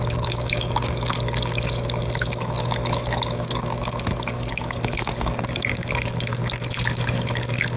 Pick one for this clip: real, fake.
fake